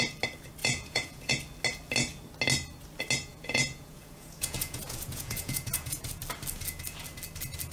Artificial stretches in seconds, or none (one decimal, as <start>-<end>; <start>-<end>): 0.6-1.3; 3.3-6.2